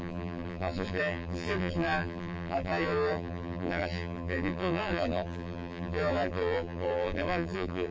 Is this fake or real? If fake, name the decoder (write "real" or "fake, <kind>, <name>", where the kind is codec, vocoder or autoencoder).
fake, vocoder, BigVGAN v2